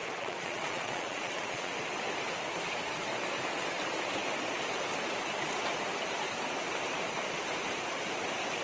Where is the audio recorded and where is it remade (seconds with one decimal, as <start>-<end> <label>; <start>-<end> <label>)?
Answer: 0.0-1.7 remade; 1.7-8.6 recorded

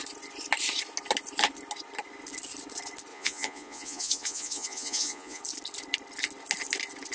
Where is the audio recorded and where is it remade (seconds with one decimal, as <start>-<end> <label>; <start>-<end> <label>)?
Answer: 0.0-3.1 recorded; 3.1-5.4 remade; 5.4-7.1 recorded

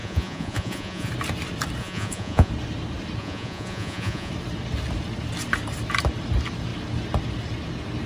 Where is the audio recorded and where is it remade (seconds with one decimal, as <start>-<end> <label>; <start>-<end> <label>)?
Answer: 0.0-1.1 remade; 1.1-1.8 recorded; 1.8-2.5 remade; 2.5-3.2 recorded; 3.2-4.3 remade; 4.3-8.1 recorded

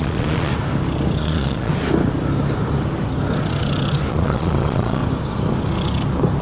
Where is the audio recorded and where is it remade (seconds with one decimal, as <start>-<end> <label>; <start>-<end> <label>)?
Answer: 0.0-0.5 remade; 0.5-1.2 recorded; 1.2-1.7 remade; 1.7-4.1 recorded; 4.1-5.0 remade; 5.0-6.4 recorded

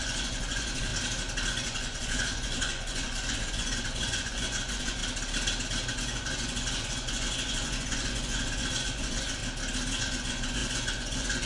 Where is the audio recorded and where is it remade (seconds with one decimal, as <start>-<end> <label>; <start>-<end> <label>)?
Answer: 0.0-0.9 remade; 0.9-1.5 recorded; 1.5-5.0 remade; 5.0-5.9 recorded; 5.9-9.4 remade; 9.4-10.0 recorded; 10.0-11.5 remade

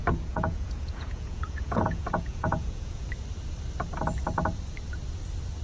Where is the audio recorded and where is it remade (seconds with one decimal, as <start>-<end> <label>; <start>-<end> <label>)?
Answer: 0.0-3.0 remade; 3.0-5.6 recorded

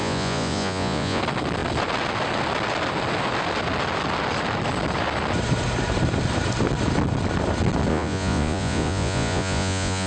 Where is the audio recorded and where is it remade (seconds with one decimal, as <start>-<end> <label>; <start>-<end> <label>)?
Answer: 0.0-1.2 remade; 1.2-7.9 recorded; 7.9-10.1 remade

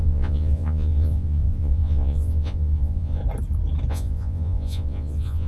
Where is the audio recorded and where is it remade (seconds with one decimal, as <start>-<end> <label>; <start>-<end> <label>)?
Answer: 0.0-3.2 remade; 3.2-3.9 recorded; 3.9-5.5 remade